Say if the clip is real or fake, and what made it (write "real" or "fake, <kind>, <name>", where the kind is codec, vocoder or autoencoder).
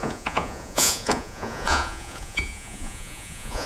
fake, vocoder, Vocos